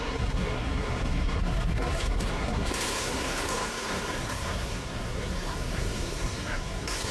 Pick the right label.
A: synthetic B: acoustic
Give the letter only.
A